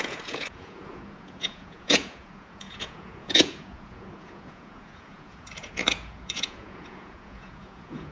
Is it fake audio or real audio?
fake